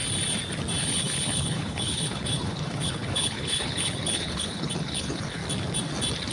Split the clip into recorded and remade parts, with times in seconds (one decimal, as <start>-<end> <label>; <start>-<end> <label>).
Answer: 0.0-0.8 recorded; 0.8-5.4 remade; 5.4-6.3 recorded